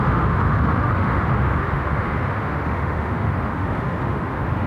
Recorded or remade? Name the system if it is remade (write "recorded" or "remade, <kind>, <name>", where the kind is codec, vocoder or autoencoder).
remade, autoencoder, DAC-VAE